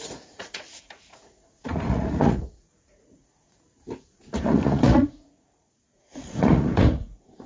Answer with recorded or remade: remade